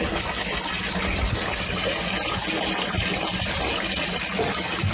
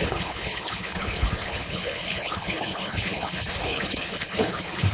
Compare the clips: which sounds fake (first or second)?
second